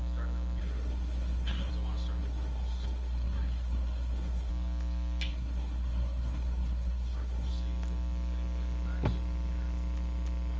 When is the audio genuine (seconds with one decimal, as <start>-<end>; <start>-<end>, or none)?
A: 0.0-0.6; 1.7-2.2; 4.5-5.3; 7.5-10.6